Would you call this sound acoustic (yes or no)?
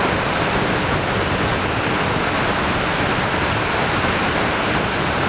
yes